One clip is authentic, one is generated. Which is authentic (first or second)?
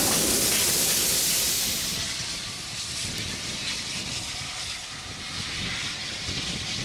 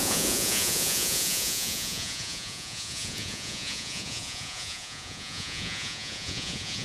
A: first